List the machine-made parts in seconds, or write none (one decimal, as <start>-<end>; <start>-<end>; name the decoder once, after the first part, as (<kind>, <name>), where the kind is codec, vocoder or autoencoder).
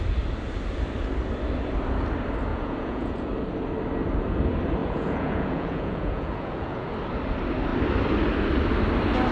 2.5-3.3 (vocoder, Vocos); 4.8-6.9